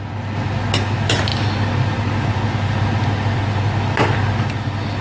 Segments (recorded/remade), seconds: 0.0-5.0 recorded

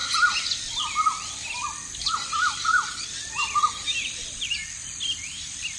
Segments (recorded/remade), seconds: 0.0-0.6 recorded; 0.6-5.8 remade

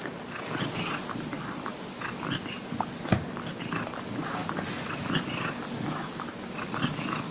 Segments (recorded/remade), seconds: 0.0-7.3 recorded

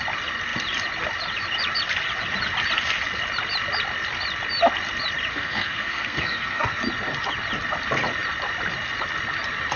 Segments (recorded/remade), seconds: 0.0-5.3 recorded; 5.3-6.8 remade; 6.8-9.8 recorded

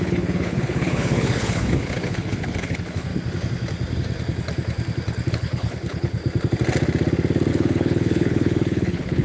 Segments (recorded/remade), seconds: 0.0-3.1 remade; 3.1-5.3 recorded; 5.3-6.2 remade; 6.2-7.5 recorded; 7.5-9.2 remade

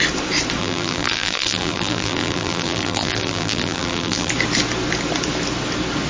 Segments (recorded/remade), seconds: 0.0-0.6 recorded; 0.6-4.3 remade; 4.3-6.1 recorded

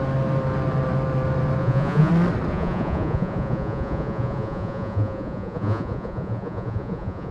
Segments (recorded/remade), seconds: 0.0-1.6 recorded; 1.6-2.1 remade; 2.1-2.5 recorded; 2.5-7.3 remade

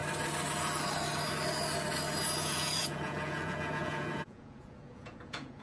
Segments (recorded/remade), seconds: 0.0-2.4 recorded; 2.4-5.6 remade